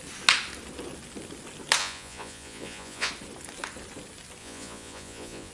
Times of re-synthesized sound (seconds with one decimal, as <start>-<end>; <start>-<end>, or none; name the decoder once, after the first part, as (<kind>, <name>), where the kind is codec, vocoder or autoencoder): 1.8-3.1 (vocoder, Vocos); 4.4-5.5